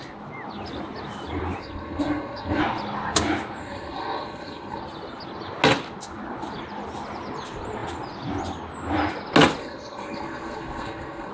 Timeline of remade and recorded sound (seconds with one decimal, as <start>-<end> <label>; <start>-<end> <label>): 0.0-1.6 recorded; 1.6-2.6 remade; 2.6-3.6 recorded; 3.6-4.8 remade; 4.8-9.6 recorded; 9.6-11.3 remade